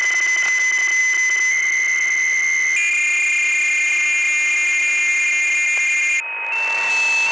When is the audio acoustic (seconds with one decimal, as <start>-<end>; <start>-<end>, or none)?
0.0-7.3